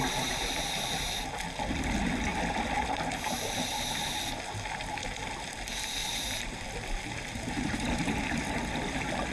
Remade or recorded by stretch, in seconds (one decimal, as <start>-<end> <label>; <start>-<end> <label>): 0.0-6.0 recorded; 6.0-8.4 remade; 8.4-9.3 recorded